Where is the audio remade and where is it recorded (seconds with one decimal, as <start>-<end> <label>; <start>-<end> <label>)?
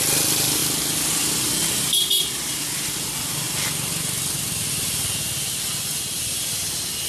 0.0-7.1 recorded